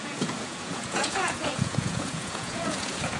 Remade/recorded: remade